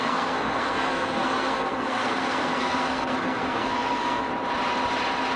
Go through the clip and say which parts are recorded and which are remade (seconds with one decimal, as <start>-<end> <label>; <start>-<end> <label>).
0.0-4.3 remade; 4.3-5.4 recorded

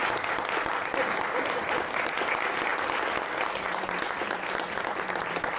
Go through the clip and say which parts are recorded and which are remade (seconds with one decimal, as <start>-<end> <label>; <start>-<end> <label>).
0.0-5.6 recorded

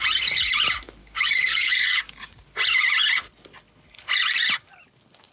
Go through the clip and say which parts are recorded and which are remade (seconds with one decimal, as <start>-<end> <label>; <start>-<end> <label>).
0.0-1.0 recorded; 1.0-2.4 remade; 2.4-5.3 recorded

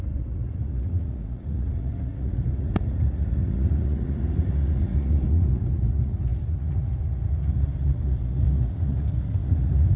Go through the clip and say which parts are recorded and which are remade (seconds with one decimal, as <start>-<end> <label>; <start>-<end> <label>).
0.0-10.0 remade